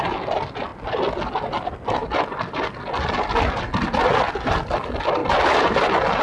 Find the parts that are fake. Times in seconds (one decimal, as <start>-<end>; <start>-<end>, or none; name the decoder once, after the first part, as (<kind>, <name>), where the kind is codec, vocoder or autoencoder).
none